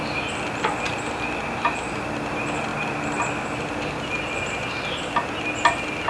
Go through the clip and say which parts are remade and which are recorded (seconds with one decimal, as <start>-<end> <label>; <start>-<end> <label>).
0.0-6.1 recorded